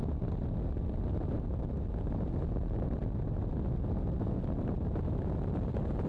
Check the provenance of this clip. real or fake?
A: real